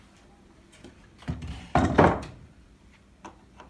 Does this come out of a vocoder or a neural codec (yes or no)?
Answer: yes